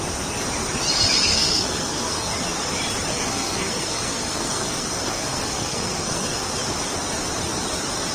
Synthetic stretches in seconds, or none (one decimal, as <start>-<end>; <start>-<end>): 1.3-2.3; 3.1-6.5